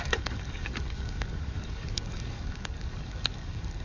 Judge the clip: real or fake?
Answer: fake